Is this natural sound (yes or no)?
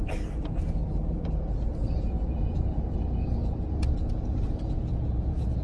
no